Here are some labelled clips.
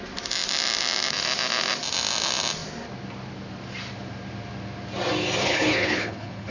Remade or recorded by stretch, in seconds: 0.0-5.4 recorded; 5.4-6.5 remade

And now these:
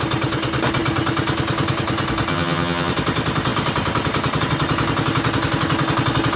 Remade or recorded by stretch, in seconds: 0.0-2.3 recorded; 2.3-2.9 remade; 2.9-6.4 recorded

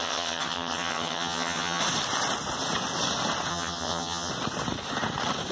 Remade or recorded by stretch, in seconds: 0.0-1.8 remade; 1.8-3.5 recorded; 3.5-4.3 remade; 4.3-5.5 recorded